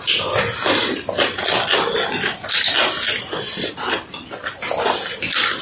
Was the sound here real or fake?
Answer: real